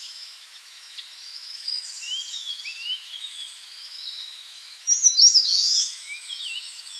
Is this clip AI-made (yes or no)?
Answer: yes